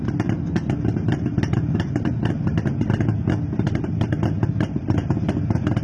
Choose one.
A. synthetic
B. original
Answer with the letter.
B